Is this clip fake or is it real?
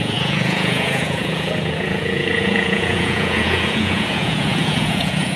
fake